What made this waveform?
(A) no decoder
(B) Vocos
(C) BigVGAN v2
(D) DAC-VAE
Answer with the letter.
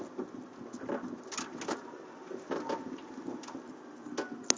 A